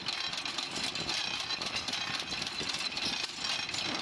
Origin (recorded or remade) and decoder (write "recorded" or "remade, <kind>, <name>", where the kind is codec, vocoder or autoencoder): recorded